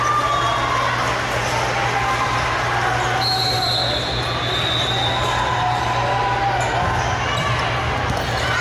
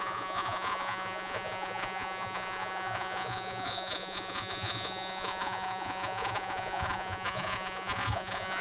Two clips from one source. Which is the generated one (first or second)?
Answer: second